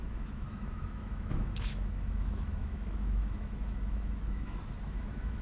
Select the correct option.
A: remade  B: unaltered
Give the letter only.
A